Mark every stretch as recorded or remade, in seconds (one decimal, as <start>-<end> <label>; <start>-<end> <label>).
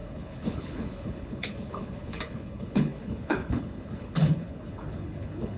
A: 0.0-5.6 remade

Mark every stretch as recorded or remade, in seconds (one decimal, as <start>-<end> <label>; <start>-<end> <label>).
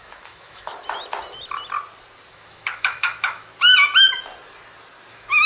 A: 0.0-0.7 remade; 0.7-2.3 recorded; 2.3-3.5 remade; 3.5-5.1 recorded; 5.1-5.5 remade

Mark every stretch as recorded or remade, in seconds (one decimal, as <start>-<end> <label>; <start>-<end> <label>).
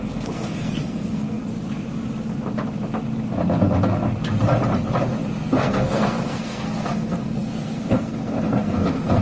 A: 0.0-1.4 remade; 1.4-5.4 recorded; 5.4-9.2 remade